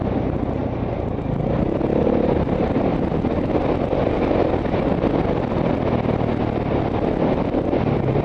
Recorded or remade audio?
recorded